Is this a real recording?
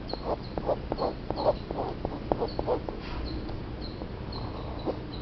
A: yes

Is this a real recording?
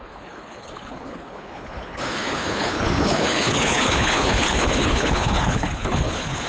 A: no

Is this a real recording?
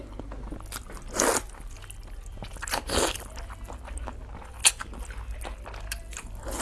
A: yes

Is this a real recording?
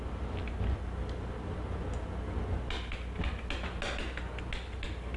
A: yes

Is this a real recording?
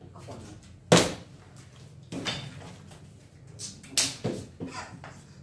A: yes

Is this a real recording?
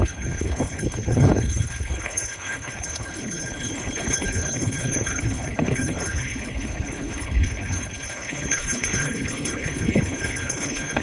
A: no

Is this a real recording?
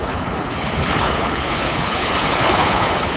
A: no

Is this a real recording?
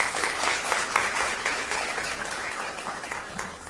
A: no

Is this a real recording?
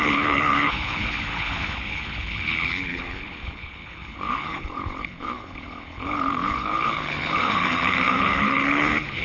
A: no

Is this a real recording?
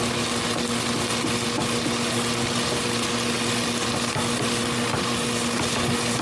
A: yes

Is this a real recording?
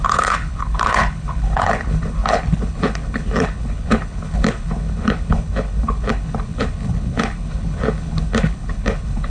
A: no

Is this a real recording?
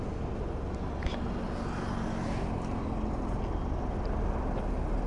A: yes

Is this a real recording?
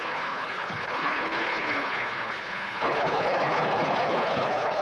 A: no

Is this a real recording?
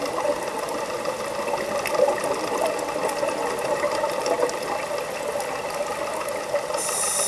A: yes